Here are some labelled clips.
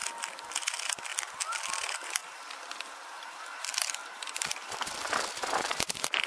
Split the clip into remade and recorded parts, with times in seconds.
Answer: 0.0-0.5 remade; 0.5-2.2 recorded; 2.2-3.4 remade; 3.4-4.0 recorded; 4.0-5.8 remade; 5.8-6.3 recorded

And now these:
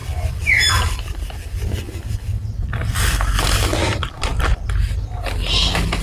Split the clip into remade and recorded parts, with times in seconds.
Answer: 0.0-6.0 recorded

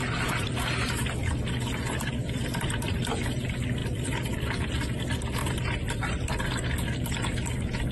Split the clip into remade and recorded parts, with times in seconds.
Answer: 0.0-0.4 recorded; 0.4-1.0 remade; 1.0-5.4 recorded; 5.4-6.4 remade; 6.4-7.9 recorded

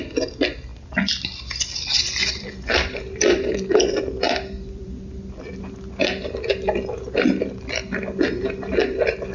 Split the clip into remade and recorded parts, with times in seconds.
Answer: 0.0-0.7 recorded; 0.7-5.1 remade; 5.1-9.3 recorded

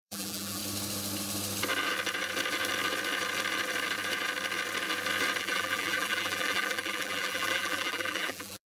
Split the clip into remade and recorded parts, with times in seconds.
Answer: 0.0-0.6 remade; 0.6-5.4 recorded; 5.4-8.8 remade

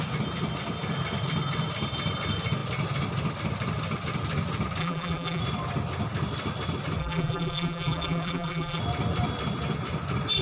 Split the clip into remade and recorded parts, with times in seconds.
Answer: 0.0-4.8 recorded; 4.8-5.4 remade; 5.4-7.0 recorded; 7.0-8.8 remade; 8.8-10.4 recorded

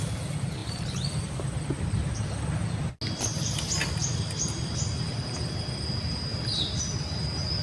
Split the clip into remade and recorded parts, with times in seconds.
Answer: 0.0-7.6 recorded